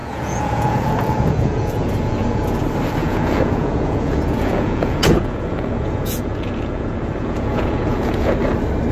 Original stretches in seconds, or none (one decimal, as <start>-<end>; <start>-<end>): 2.6-3.0; 8.3-8.9